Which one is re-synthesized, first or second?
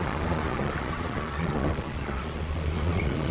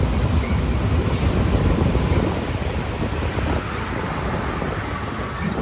first